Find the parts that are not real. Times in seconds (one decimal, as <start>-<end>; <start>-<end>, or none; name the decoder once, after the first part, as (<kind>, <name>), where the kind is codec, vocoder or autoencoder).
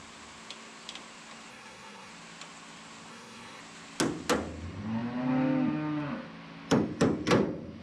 1.5-2.1 (codec, SNAC); 3.1-3.6